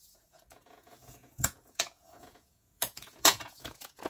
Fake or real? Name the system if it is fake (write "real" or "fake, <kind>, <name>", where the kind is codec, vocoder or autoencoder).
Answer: fake, vocoder, Vocos